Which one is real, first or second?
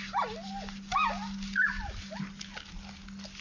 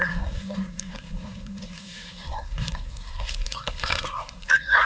first